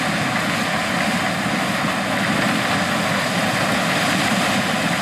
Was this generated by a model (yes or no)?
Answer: no